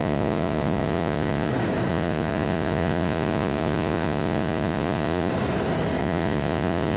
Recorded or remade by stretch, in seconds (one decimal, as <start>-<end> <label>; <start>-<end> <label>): 0.0-1.5 remade; 1.5-1.9 recorded; 1.9-5.3 remade; 5.3-6.0 recorded; 6.0-7.0 remade